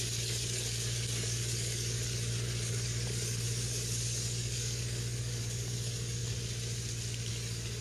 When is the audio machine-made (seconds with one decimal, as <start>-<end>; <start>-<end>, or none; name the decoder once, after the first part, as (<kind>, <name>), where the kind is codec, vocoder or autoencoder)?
0.0-6.2 (codec, DAC); 7.3-7.8